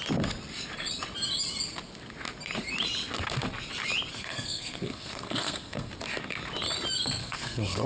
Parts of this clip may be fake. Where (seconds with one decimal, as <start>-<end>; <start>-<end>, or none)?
4.1-5.9; 7.2-7.9